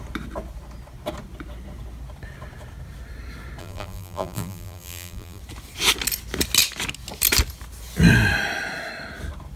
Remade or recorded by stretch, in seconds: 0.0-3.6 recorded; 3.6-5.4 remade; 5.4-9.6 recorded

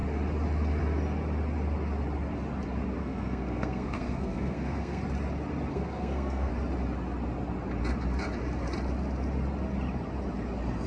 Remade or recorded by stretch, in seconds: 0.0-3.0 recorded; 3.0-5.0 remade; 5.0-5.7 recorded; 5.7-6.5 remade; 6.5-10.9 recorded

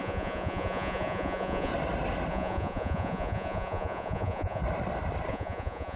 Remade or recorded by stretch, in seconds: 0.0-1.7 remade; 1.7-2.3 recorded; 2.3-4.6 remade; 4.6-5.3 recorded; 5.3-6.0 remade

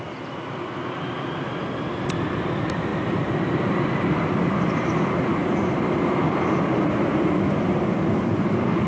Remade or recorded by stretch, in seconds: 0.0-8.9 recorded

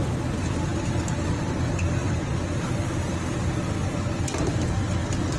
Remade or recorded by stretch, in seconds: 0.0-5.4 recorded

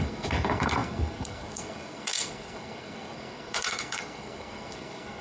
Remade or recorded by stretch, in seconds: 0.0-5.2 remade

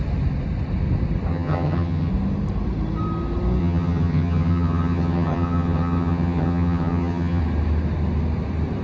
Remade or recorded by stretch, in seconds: 0.0-1.3 recorded; 1.3-2.1 remade; 2.1-3.6 recorded; 3.6-7.4 remade; 7.4-8.8 recorded